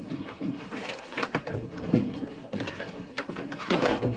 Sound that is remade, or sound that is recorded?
remade